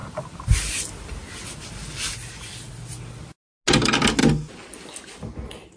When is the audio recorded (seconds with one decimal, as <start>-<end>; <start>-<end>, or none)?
0.0-5.8